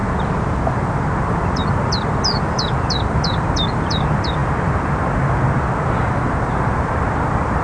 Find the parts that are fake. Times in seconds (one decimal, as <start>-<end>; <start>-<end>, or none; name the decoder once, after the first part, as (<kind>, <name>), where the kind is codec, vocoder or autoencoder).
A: none